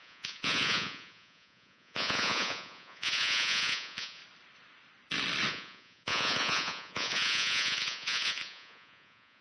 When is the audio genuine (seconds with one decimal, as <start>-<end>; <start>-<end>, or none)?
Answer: 4.2-5.5